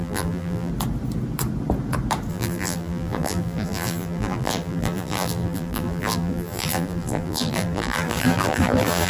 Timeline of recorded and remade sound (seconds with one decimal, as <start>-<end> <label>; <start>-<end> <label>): 0.0-0.7 remade; 0.7-2.3 recorded; 2.3-9.1 remade